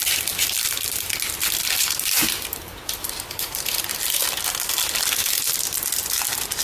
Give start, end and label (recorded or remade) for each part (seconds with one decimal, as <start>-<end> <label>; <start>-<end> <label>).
0.0-1.8 recorded; 1.8-4.2 remade; 4.2-6.6 recorded